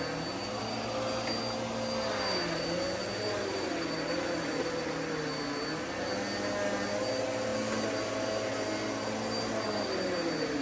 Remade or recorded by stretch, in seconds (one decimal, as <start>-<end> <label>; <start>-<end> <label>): 0.0-10.6 recorded